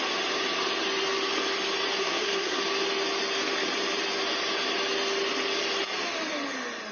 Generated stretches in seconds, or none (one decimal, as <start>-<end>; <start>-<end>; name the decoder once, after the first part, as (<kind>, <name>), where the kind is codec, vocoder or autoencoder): 2.0-2.6 (codec, SNAC)